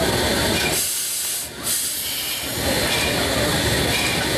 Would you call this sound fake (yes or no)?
no